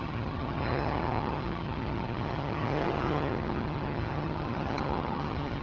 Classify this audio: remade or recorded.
remade